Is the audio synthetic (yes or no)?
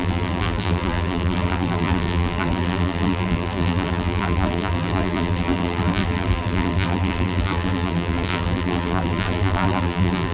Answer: yes